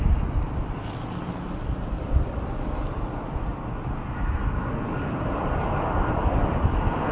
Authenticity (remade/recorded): recorded